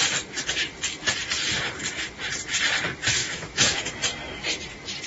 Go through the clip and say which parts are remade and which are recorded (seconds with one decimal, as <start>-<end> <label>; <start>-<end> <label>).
0.0-3.2 recorded; 3.2-3.8 remade; 3.8-5.1 recorded